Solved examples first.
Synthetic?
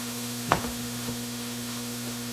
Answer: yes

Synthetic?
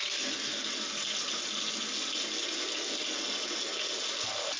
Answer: no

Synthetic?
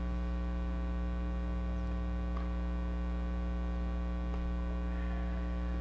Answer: no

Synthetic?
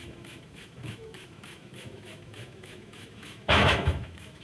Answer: yes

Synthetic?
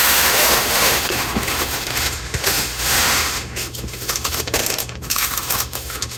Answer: yes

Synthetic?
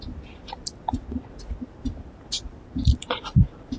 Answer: no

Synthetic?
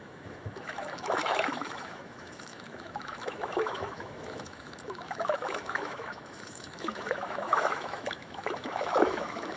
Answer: yes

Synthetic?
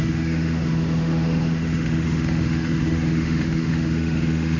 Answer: yes